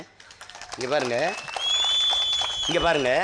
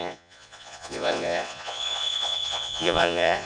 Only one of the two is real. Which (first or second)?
first